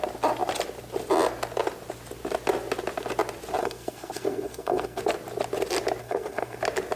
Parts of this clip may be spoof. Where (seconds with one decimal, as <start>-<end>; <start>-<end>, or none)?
3.6-5.0; 6.0-6.6